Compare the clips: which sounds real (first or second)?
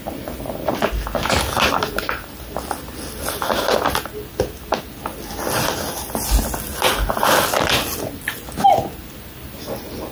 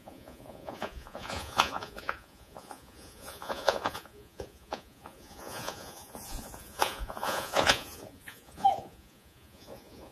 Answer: first